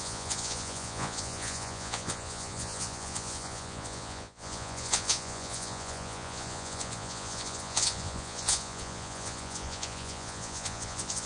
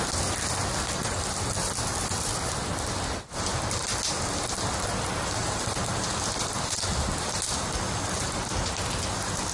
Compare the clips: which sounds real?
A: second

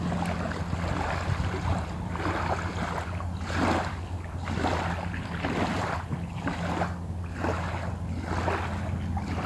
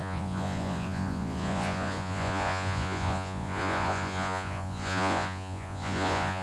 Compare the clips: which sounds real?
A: first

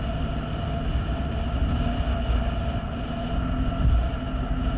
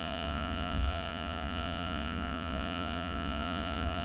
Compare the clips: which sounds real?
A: first